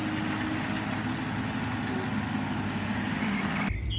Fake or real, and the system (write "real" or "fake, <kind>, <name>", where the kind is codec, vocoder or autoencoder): real